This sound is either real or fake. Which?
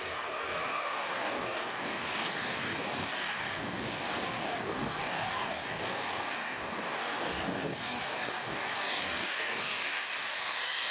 fake